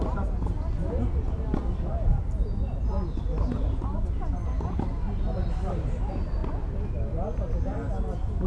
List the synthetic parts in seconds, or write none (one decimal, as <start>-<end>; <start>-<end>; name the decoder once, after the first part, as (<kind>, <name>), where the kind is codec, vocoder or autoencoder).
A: none